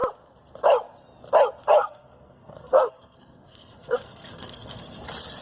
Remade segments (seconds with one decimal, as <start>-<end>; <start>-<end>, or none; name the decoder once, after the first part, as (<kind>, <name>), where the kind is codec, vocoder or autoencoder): 1.8-5.0 (codec, SNAC)